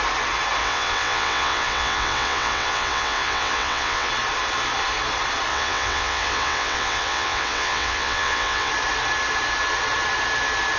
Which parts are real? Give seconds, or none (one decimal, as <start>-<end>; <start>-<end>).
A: 0.0-0.6; 4.1-5.5; 8.7-10.8